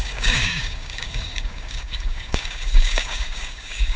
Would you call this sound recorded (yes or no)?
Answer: no